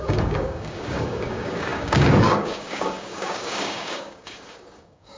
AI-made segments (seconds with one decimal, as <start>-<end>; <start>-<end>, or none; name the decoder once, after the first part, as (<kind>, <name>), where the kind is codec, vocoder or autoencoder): 0.0-5.2 (codec, DAC)

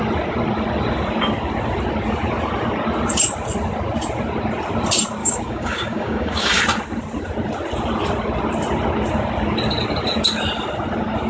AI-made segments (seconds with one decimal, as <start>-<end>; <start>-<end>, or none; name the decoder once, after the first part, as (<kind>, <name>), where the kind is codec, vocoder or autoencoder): 5.2-6.6 (codec, DAC)

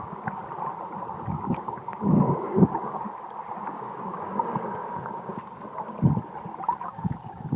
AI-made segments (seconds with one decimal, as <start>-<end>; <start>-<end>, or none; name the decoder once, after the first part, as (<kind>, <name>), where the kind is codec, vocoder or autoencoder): 0.0-0.4 (codec, DAC); 1.3-3.0; 3.7-5.4; 6.8-7.6

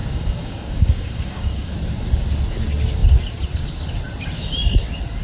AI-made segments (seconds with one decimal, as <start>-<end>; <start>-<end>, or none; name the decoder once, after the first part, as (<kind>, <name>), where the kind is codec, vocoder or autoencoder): 0.0-1.7 (codec, DAC)

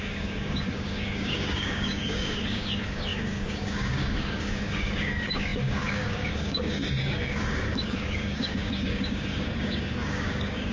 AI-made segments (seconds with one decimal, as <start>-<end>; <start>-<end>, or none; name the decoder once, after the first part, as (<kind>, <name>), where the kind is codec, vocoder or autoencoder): 0.0-10.7 (codec, DAC)

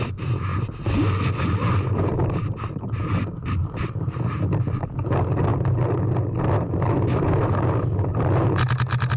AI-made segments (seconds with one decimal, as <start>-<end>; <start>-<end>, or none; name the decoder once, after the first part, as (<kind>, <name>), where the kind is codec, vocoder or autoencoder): none

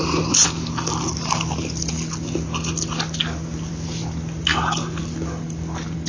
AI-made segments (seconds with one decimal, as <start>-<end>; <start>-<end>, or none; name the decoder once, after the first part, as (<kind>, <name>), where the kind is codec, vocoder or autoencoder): none

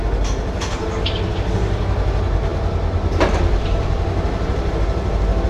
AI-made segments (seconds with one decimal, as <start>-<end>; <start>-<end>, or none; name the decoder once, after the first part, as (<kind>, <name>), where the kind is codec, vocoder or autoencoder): none